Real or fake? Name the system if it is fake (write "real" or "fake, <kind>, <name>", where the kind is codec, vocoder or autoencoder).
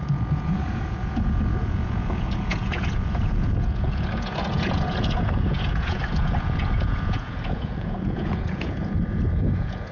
fake, vocoder, Vocos